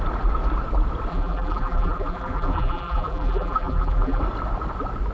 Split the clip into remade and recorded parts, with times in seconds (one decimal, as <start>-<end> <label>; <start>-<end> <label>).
0.0-1.1 recorded; 1.1-4.2 remade; 4.2-5.1 recorded